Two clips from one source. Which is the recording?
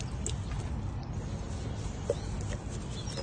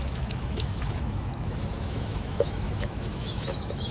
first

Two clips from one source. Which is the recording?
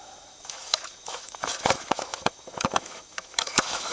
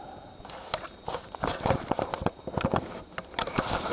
second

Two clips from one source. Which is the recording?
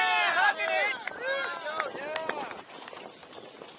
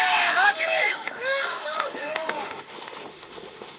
first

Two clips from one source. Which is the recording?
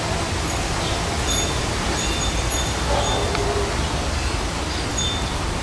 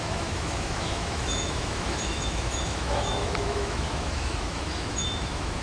first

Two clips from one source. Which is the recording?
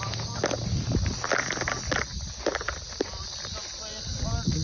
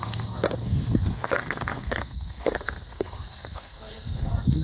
first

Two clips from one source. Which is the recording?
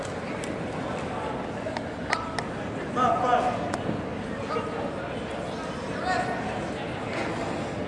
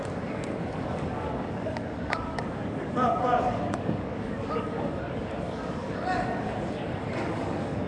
first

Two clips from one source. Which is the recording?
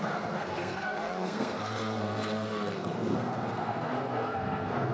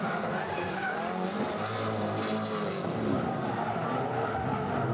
second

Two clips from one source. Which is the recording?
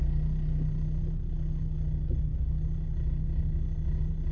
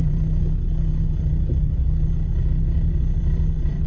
first